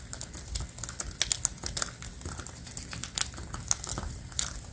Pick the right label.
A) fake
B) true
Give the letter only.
B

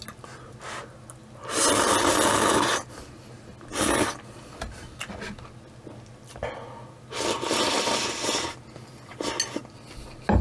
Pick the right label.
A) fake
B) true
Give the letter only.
B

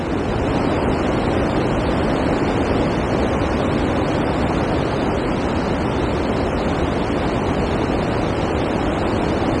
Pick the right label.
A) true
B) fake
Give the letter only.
A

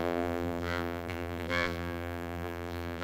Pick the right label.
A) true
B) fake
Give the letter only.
B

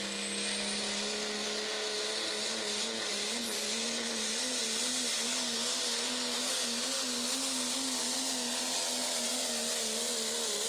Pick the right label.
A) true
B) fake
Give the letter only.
A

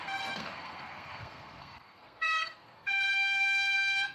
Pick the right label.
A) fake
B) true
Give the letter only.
A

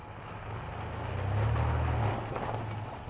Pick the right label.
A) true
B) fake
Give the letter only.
A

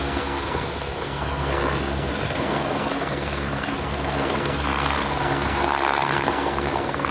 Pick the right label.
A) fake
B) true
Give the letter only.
A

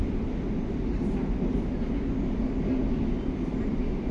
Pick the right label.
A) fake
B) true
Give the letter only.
B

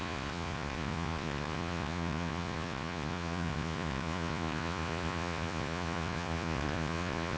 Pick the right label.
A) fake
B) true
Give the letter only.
A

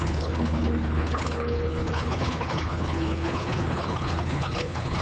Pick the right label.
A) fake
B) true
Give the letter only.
A